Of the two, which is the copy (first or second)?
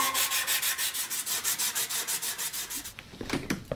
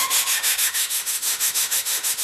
second